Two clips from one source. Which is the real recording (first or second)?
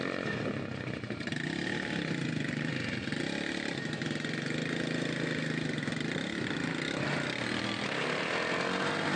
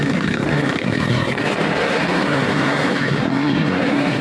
first